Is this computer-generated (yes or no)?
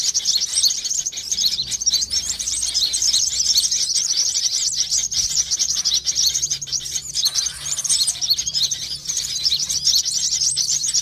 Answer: yes